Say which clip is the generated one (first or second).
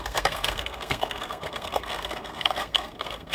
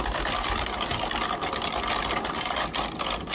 first